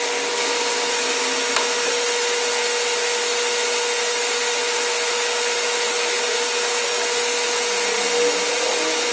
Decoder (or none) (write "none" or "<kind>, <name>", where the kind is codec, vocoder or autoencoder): none